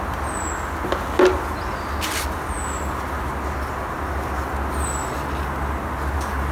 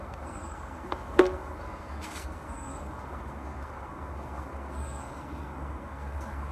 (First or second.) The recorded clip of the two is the first